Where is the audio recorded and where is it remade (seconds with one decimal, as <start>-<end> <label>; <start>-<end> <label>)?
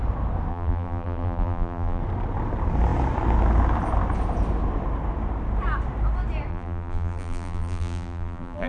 0.0-0.5 recorded; 0.5-2.0 remade; 2.0-6.5 recorded; 6.5-8.7 remade